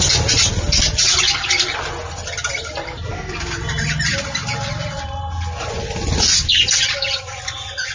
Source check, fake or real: real